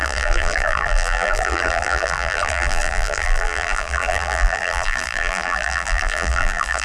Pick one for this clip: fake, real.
fake